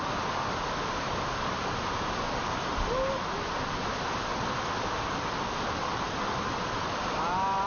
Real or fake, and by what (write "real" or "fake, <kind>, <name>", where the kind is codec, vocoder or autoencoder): real